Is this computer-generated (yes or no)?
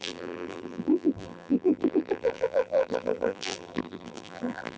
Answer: yes